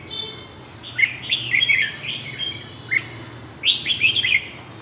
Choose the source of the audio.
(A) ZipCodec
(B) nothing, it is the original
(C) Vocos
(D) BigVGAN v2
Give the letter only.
B